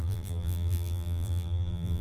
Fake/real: fake